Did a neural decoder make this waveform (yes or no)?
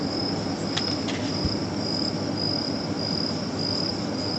no